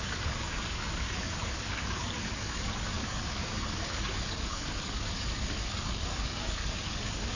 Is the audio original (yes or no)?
no